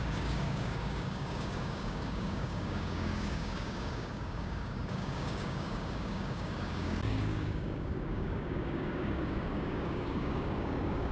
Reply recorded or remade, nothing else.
remade